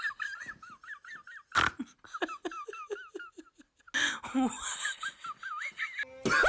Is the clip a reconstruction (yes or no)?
no